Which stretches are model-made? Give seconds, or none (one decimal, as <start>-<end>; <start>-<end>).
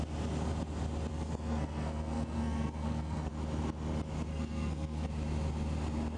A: 1.1-3.3; 4.3-5.1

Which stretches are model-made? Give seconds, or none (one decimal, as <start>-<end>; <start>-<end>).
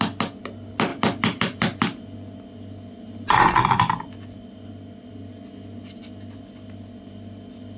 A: none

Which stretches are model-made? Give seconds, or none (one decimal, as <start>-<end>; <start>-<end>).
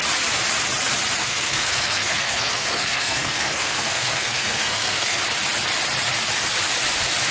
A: 1.2-5.2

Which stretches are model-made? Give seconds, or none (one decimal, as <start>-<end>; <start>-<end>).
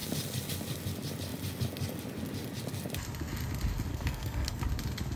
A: 3.9-4.6